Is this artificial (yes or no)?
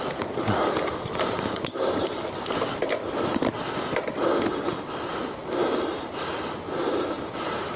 no